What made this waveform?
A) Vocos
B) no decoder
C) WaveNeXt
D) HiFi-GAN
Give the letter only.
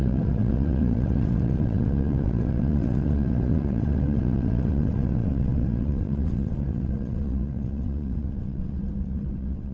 C